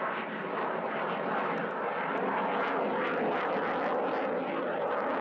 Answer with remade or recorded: recorded